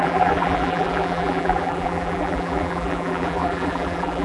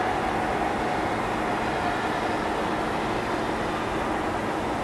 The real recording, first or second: second